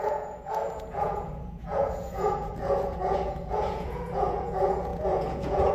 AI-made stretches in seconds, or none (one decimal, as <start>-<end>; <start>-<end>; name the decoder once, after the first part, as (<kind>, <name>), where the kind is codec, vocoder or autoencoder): 0.0-5.7 (vocoder, Vocos)